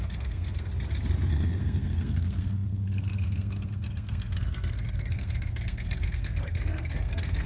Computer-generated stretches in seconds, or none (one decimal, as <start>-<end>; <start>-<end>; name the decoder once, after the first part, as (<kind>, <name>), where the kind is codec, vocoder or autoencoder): 0.0-0.7 (codec, SNAC); 1.3-7.5